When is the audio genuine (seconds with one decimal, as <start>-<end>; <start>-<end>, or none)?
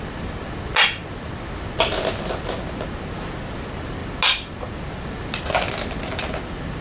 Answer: 0.0-6.8